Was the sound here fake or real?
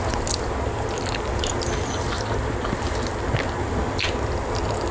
real